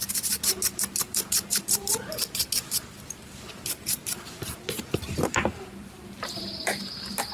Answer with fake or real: fake